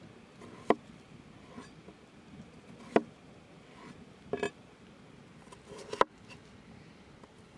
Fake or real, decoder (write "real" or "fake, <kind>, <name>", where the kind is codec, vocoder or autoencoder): real